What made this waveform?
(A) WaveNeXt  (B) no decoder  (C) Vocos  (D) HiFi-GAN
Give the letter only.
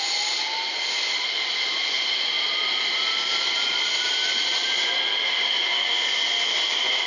B